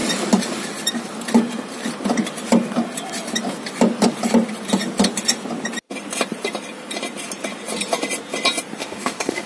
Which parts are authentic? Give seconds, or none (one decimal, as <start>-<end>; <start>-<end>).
0.0-8.8